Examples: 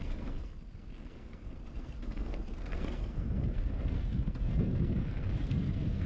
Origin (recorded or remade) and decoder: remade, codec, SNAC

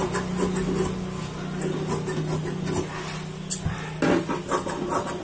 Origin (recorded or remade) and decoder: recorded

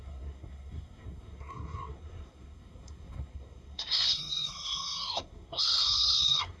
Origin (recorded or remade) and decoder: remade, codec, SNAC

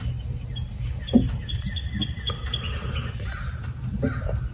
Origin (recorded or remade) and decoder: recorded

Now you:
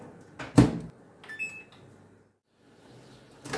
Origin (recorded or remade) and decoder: recorded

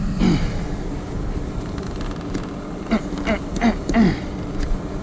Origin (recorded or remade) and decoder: recorded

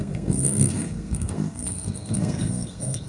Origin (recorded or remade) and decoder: remade, codec, SNAC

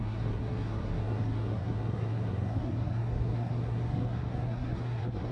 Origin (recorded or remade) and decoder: remade, codec, SNAC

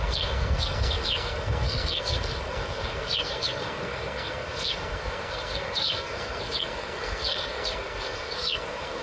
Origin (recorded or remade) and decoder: remade, codec, SNAC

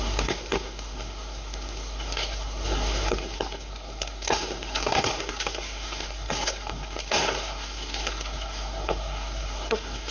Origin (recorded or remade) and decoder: remade, codec, SNAC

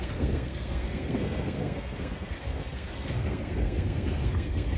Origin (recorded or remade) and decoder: remade, codec, SNAC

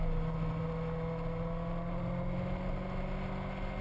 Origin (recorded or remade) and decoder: recorded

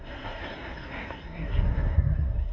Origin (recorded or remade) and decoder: remade, codec, SNAC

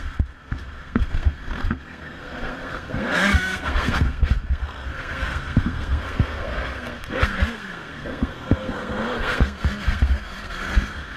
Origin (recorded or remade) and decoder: remade, codec, SNAC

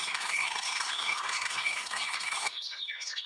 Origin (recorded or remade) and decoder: remade, codec, SNAC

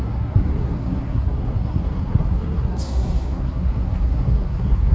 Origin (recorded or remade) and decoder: remade, codec, SNAC